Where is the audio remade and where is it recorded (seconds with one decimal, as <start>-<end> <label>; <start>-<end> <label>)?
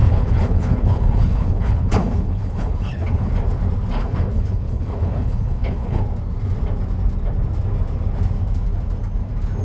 0.0-3.3 remade; 3.3-4.0 recorded; 4.0-6.0 remade; 6.0-9.6 recorded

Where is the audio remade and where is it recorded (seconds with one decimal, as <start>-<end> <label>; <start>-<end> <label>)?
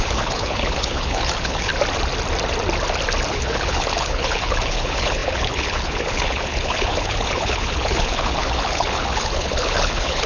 0.0-1.7 remade; 1.7-3.3 recorded; 3.3-10.3 remade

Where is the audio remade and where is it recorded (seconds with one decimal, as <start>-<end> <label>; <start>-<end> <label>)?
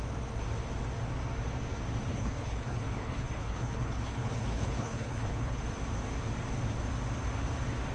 0.0-2.1 recorded; 2.1-5.6 remade; 5.6-7.9 recorded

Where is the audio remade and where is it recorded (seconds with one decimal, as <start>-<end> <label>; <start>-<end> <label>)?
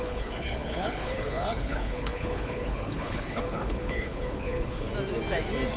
0.0-4.9 remade; 4.9-5.8 recorded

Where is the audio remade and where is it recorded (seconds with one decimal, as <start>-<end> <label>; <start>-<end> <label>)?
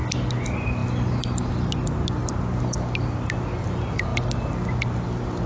0.0-5.5 recorded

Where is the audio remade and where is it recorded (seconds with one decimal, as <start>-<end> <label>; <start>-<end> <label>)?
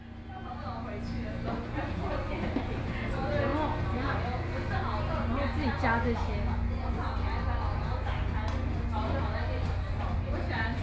0.0-10.8 recorded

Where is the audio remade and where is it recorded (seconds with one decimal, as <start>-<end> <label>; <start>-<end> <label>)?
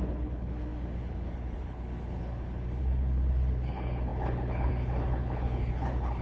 0.0-6.2 remade